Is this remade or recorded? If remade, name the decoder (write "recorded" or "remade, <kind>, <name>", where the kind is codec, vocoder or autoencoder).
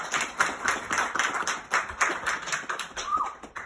recorded